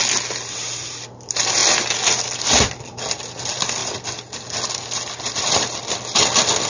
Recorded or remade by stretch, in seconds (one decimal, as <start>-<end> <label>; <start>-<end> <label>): 0.0-6.7 recorded